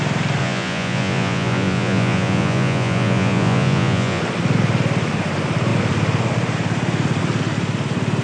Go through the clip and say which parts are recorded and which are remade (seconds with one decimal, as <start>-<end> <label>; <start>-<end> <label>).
0.0-0.4 recorded; 0.4-4.2 remade; 4.2-8.2 recorded